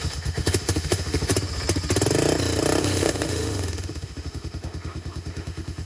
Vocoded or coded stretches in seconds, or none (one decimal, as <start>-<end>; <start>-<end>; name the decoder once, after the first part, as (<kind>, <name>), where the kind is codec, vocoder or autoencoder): 0.0-1.3 (autoencoder, DAC-VAE); 2.8-5.9